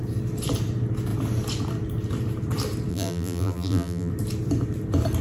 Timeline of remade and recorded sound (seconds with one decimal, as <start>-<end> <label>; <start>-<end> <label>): 0.0-2.9 recorded; 2.9-4.1 remade; 4.1-5.2 recorded